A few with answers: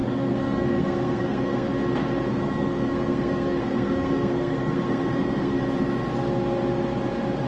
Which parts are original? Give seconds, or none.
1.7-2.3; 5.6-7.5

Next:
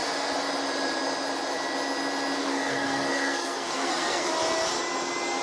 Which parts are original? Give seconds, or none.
0.0-2.4; 4.3-5.4